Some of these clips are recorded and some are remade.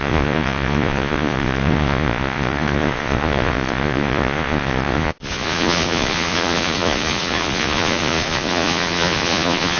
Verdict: remade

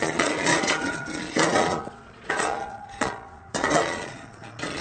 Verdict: remade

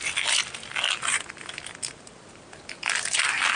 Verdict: recorded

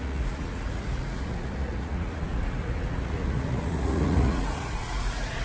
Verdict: remade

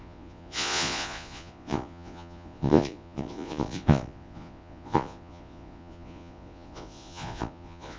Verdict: remade